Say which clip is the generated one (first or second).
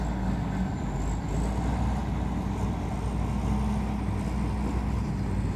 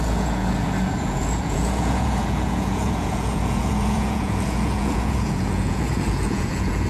second